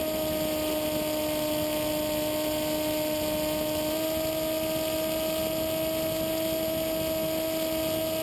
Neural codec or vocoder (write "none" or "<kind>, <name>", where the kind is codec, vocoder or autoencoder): none